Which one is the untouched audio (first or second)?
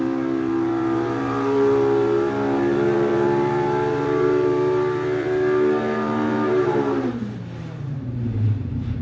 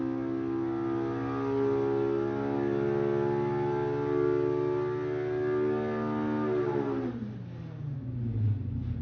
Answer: second